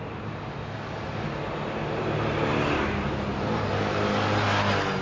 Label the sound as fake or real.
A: real